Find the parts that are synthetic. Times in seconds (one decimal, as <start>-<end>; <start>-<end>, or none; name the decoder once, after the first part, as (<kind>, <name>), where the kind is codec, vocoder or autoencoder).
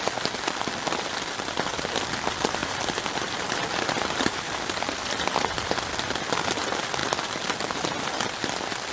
2.6-5.9 (vocoder, BigVGAN v2); 7.0-8.9